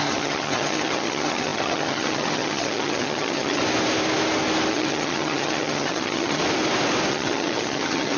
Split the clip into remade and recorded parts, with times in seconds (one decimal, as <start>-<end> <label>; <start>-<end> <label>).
0.0-3.6 remade; 3.6-4.7 recorded; 4.7-6.4 remade; 6.4-7.1 recorded; 7.1-8.2 remade